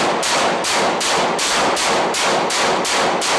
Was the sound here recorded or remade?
remade